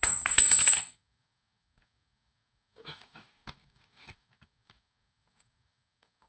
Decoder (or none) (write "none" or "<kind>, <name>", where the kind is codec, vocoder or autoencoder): codec, DAC